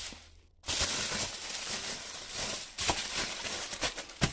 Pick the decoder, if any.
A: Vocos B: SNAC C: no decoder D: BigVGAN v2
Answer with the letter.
C